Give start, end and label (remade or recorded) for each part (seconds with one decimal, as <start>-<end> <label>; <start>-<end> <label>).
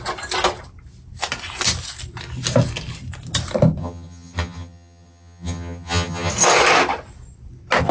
0.0-3.8 recorded; 3.8-6.3 remade; 6.3-7.9 recorded